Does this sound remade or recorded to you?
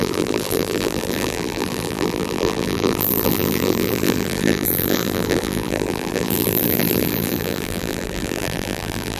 remade